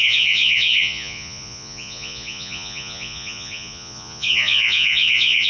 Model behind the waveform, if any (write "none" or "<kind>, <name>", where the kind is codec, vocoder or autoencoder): vocoder, Vocos